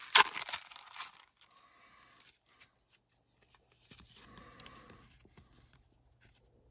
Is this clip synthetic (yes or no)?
no